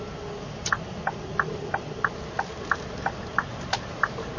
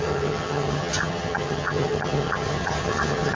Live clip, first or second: first